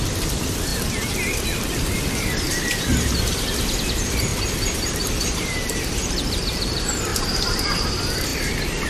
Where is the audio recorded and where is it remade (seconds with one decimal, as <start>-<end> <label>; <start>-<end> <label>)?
0.0-0.7 remade; 0.7-1.9 recorded; 1.9-8.9 remade